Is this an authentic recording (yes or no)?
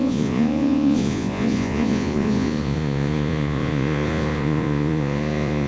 no